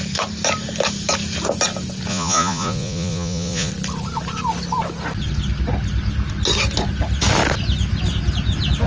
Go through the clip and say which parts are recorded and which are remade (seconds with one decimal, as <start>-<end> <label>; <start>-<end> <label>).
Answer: 0.0-2.1 recorded; 2.1-3.7 remade; 3.7-8.9 recorded